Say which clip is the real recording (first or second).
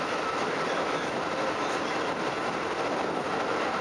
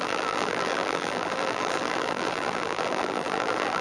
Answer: first